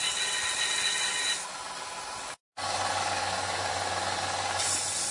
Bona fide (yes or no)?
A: yes